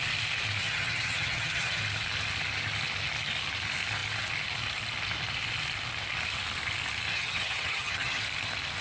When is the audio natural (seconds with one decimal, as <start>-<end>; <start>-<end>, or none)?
0.0-0.6; 1.8-7.1; 8.2-8.8